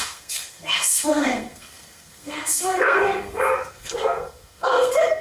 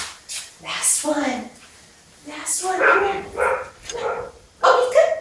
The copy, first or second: first